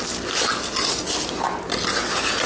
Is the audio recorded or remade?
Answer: recorded